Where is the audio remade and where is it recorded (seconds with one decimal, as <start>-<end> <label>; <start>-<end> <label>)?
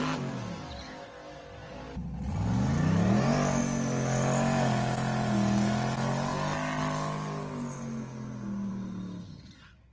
0.0-9.9 recorded